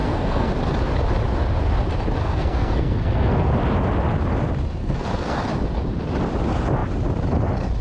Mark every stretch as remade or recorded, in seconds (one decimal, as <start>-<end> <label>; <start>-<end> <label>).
0.0-0.5 remade; 0.5-2.2 recorded; 2.2-3.5 remade; 3.5-4.8 recorded; 4.8-5.5 remade; 5.5-7.8 recorded